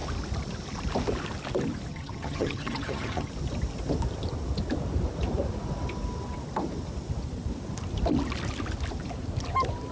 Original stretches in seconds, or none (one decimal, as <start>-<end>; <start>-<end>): 0.0-1.9; 3.3-9.9